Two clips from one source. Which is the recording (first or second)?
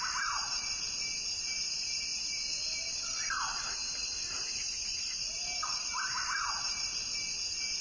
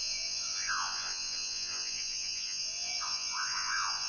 first